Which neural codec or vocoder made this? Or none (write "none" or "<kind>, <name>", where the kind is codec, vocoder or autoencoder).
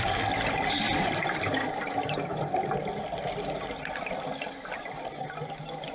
none